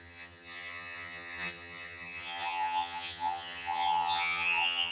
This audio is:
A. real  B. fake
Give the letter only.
B